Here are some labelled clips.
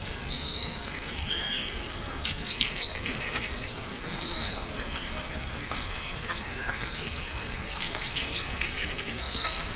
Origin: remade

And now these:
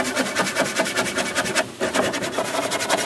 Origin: recorded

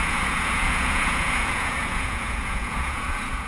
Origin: remade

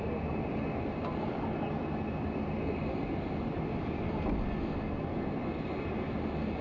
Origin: recorded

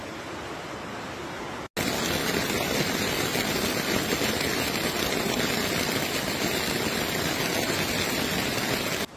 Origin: recorded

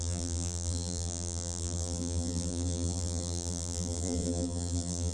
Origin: remade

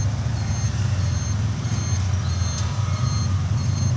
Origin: recorded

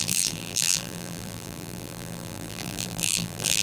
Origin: remade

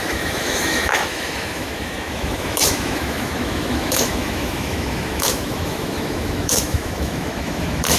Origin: remade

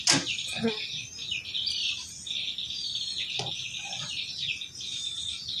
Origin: recorded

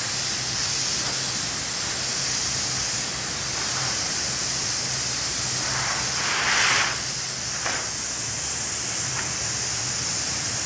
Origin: recorded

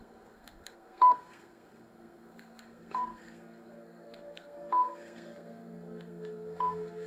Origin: remade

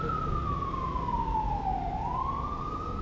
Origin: recorded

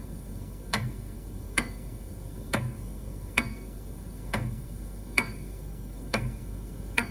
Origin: remade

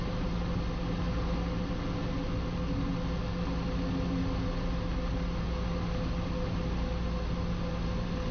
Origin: recorded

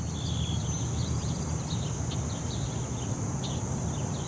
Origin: recorded